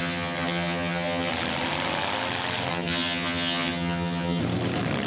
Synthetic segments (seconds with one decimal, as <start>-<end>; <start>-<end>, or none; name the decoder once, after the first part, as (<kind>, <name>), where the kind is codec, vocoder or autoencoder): 0.0-1.3 (vocoder, HiFi-GAN); 2.7-4.4